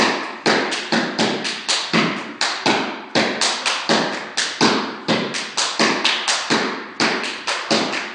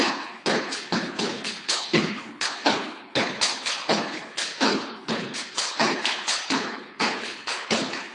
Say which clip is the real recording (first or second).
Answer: first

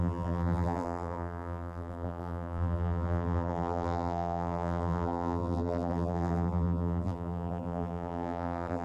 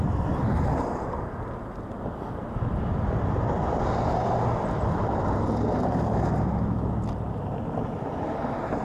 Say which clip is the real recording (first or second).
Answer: second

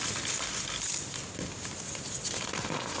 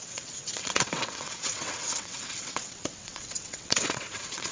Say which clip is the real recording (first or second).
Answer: first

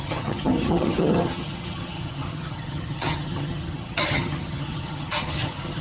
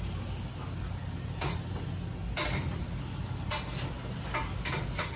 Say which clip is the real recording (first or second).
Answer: second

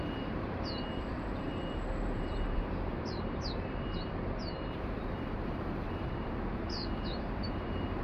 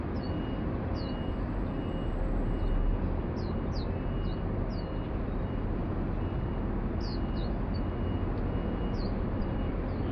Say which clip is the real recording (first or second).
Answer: second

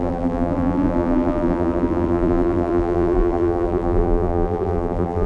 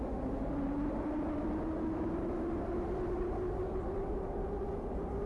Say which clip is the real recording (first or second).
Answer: second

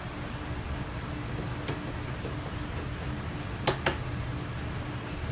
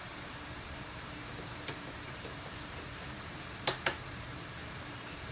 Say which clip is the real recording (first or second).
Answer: first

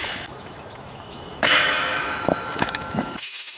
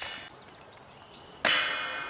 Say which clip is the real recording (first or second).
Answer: second